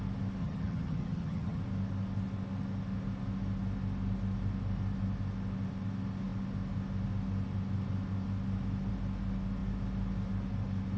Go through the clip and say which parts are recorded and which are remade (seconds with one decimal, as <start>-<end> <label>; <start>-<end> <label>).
0.0-0.4 recorded; 0.4-1.6 remade; 1.6-11.0 recorded